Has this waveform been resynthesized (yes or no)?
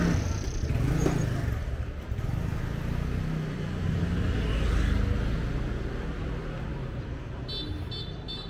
no